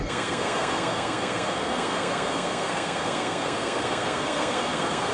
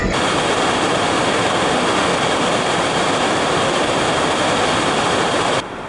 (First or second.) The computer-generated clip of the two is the first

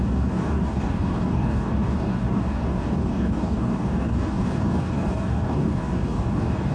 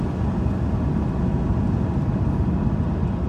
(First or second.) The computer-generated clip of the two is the first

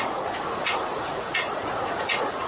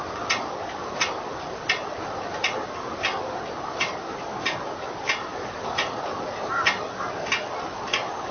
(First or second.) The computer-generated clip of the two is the first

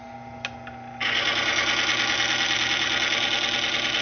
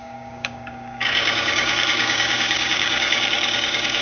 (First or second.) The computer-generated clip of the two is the second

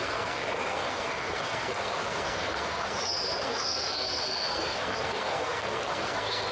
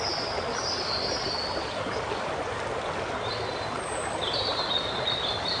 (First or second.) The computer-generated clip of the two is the first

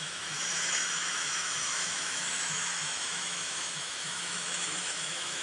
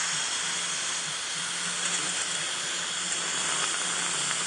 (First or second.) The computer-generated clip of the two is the first